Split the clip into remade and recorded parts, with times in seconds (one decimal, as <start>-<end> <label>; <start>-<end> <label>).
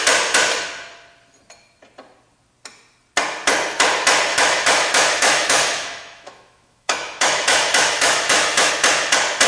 0.0-4.3 recorded; 4.3-8.7 remade; 8.7-9.5 recorded